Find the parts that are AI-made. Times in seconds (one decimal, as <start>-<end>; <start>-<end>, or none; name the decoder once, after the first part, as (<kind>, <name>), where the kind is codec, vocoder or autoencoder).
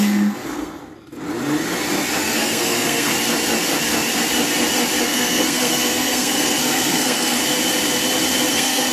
0.0-0.8 (codec, SNAC); 2.2-3.1; 5.0-7.4; 8.5-8.9